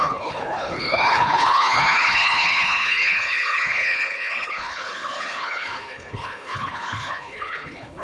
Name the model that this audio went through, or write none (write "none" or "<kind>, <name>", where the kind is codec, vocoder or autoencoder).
codec, HILCodec